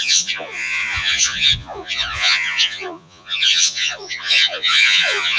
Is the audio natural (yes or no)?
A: no